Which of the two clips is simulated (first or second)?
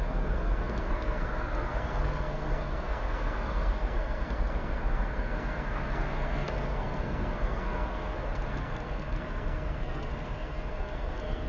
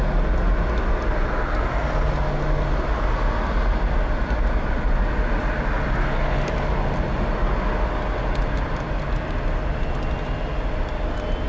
first